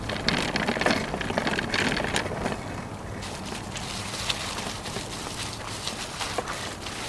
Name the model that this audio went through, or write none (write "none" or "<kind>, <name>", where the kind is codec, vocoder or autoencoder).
none